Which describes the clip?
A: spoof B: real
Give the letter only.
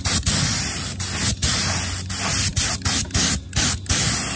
B